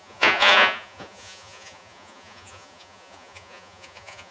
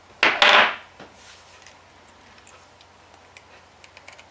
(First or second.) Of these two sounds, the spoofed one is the first